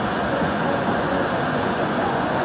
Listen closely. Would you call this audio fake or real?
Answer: fake